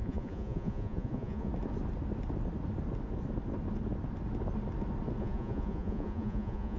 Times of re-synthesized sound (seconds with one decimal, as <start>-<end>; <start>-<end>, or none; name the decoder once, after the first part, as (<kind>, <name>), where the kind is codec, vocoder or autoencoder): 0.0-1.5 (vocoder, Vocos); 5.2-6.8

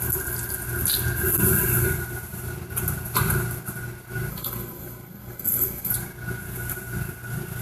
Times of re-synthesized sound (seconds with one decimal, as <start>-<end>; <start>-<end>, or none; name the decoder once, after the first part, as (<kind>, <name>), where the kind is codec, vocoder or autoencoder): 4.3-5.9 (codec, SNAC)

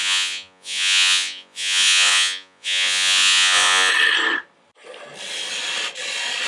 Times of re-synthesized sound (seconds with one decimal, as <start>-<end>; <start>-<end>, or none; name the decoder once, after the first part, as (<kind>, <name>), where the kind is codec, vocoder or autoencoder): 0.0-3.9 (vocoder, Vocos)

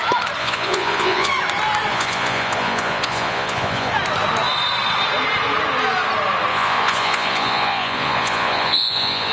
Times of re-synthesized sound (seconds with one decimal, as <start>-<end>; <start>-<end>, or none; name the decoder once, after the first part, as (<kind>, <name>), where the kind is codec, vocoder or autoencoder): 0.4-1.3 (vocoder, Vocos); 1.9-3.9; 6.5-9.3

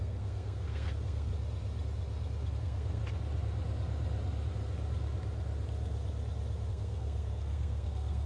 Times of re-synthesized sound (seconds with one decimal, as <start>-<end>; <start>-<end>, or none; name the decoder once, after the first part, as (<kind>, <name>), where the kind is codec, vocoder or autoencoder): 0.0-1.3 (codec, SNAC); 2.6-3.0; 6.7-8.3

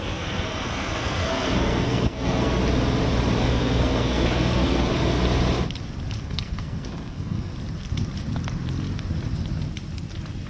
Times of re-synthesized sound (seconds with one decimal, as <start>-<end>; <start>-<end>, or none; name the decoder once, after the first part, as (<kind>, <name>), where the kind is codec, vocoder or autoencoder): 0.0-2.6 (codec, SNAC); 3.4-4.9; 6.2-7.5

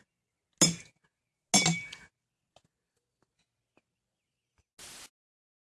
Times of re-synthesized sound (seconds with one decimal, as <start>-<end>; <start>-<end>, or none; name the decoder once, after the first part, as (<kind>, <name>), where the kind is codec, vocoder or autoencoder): none

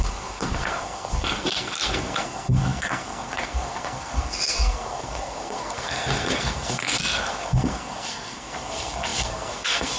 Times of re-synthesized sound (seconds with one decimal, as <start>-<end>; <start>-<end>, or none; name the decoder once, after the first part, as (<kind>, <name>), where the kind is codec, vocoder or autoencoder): 0.0-10.0 (codec, SNAC)